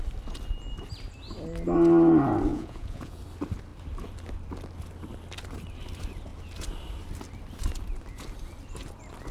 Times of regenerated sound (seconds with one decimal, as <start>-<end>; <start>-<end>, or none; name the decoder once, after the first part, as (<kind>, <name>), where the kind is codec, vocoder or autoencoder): 2.5-3.2 (vocoder, Vocos)